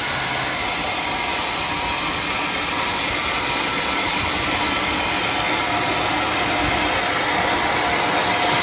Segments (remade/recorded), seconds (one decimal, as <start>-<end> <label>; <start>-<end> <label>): 0.0-8.6 recorded

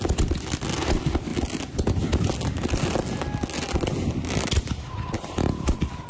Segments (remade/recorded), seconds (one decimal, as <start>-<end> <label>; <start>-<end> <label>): 0.0-6.1 recorded